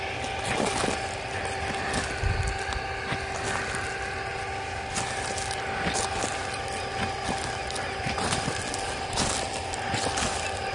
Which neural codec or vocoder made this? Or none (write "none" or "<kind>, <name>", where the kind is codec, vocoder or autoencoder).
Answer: none